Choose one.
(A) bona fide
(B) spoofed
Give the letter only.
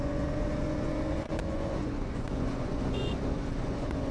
B